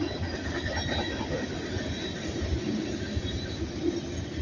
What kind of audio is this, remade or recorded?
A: recorded